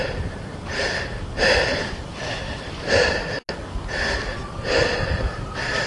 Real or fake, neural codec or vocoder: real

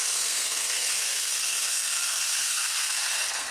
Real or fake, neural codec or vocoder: fake, codec, SNAC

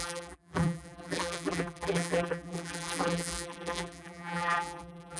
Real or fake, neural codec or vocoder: fake, vocoder, BigVGAN v2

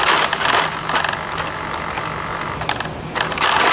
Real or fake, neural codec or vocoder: real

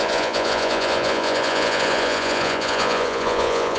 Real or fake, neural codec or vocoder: fake, vocoder, Vocos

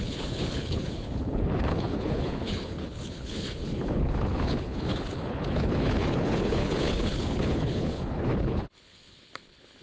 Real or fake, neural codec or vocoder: fake, codec, HILCodec